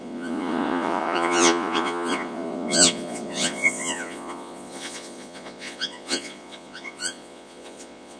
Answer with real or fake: fake